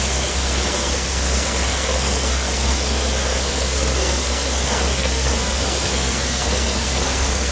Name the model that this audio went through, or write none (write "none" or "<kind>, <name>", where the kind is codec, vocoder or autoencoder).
codec, SNAC